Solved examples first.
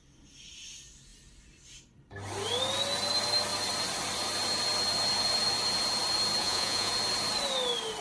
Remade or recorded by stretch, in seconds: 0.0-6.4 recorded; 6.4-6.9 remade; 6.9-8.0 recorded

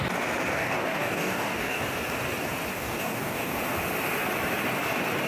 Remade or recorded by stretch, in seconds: 0.0-0.5 recorded; 0.5-1.8 remade; 1.8-2.7 recorded; 2.7-3.6 remade; 3.6-5.3 recorded

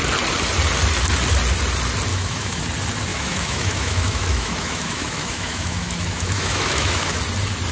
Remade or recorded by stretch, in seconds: 0.0-2.1 recorded; 2.1-2.6 remade; 2.6-3.1 recorded; 3.1-7.2 remade; 7.2-7.7 recorded

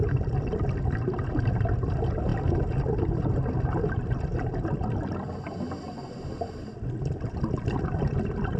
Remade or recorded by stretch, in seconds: 0.0-8.6 recorded